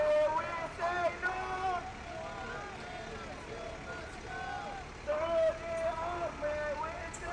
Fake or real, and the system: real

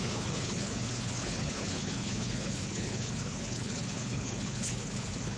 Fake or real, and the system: fake, codec, HILCodec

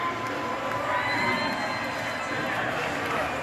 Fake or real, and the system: real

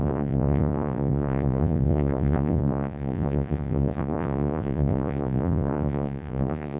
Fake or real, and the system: fake, vocoder, Vocos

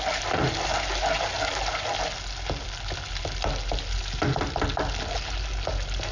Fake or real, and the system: real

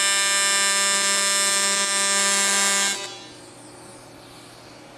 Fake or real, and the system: real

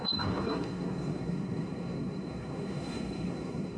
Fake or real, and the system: fake, codec, SNAC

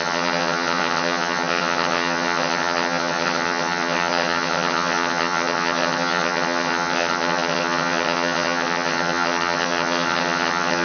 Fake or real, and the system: fake, vocoder, HiFi-GAN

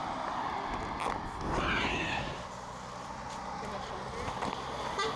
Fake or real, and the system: real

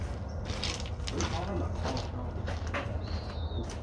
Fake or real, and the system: real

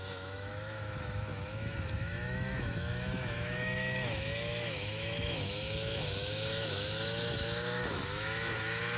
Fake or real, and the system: fake, autoencoder, DAC-VAE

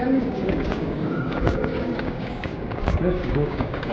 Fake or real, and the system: fake, codec, DAC